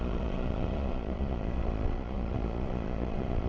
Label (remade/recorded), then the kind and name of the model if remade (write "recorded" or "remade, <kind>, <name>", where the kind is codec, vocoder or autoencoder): remade, vocoder, Vocos